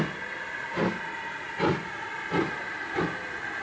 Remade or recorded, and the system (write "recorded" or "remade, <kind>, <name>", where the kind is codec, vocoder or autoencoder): recorded